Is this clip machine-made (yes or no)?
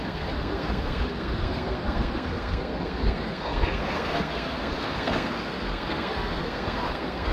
yes